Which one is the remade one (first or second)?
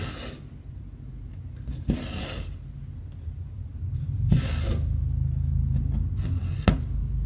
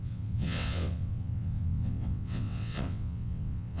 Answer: second